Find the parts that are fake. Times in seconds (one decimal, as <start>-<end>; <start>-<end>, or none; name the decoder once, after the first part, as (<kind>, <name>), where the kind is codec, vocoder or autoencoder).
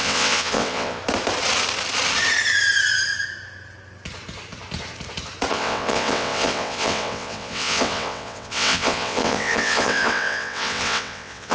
0.0-1.0 (vocoder, WaveNeXt); 5.5-11.5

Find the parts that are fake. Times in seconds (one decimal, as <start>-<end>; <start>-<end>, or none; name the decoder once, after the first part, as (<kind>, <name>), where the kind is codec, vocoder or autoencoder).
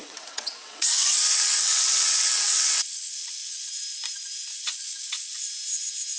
0.0-3.7 (vocoder, WaveNeXt); 4.5-5.4